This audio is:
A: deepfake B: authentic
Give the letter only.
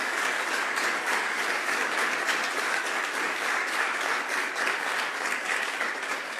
A